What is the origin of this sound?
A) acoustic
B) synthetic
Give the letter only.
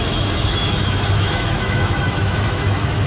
B